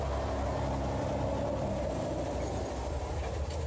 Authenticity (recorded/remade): recorded